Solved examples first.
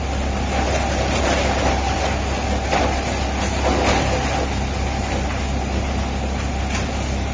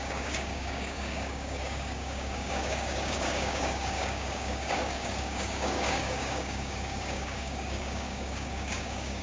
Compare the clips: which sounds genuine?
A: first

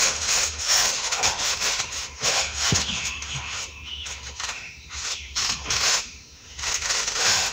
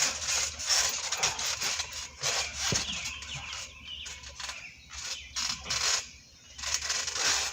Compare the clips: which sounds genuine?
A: second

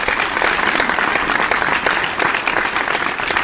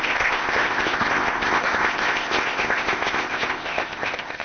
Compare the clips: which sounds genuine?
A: first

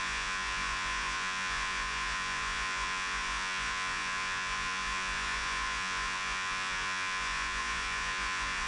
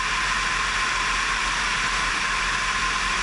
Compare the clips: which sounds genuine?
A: second